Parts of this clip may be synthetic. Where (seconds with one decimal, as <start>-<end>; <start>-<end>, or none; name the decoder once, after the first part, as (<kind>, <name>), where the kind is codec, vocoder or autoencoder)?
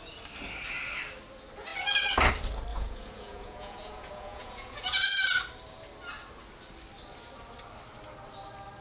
2.7-5.1 (vocoder, Vocos)